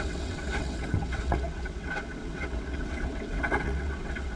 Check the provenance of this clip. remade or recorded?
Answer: remade